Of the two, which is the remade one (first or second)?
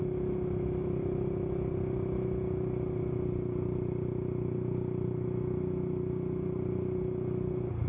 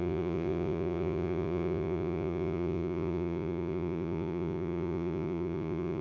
second